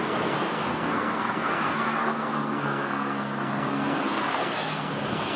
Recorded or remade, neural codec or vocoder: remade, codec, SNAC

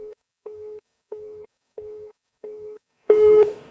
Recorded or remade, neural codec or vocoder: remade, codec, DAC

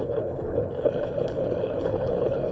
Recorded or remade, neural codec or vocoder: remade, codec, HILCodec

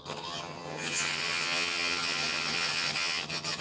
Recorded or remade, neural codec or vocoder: remade, vocoder, HiFi-GAN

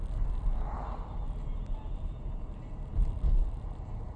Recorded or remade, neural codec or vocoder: remade, vocoder, BigVGAN v2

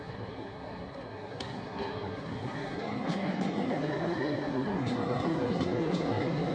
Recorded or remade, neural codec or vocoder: remade, codec, SNAC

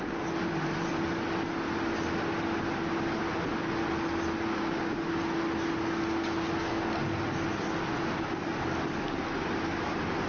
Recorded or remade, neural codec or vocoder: recorded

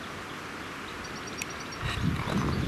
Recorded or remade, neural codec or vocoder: recorded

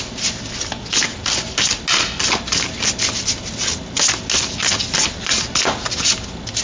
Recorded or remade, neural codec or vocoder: recorded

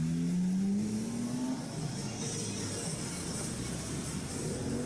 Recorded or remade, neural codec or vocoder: recorded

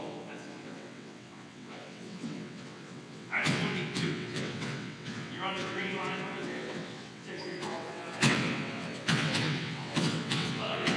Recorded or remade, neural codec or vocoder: remade, vocoder, WaveNeXt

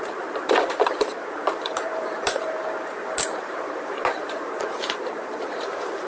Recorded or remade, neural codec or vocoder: remade, vocoder, BigVGAN v2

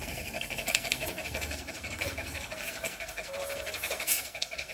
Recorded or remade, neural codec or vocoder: remade, codec, SNAC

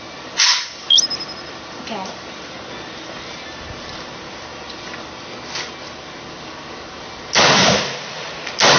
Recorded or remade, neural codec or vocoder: recorded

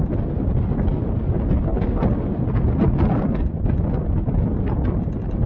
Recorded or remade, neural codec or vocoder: recorded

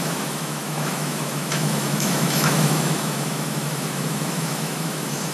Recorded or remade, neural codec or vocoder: remade, autoencoder, DAC-VAE